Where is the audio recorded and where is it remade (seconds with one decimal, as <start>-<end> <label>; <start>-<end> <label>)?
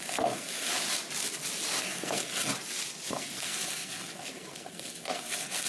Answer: 0.0-0.7 remade; 0.7-1.8 recorded; 1.8-2.5 remade; 2.5-3.1 recorded; 3.1-5.7 remade